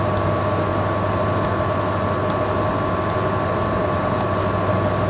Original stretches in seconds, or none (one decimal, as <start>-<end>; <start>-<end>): 0.0-5.1